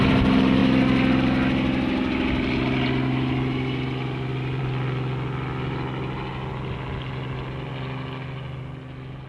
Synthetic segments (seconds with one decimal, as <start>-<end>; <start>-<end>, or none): none

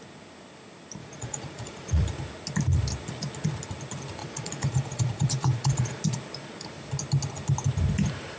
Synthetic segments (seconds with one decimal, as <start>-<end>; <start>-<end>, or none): 1.0-2.0; 4.2-6.0

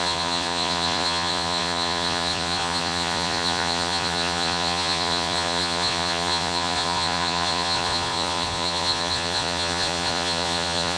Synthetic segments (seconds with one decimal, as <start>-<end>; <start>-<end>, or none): 0.0-11.0

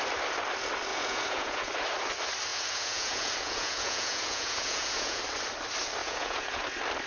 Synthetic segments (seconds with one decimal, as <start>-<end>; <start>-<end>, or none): 0.9-1.7; 2.5-5.2; 6.0-6.6

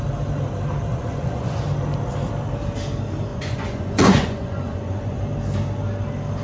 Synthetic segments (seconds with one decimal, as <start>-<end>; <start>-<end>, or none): 0.9-1.6; 3.3-5.2

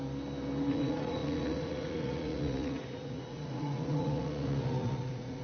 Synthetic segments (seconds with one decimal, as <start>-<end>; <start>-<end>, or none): 0.7-5.4

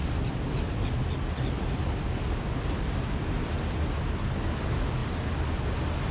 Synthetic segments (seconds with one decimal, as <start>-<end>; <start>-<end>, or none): none

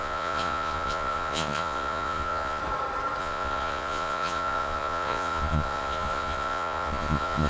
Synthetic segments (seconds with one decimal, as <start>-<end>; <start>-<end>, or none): 0.0-2.6; 3.2-7.5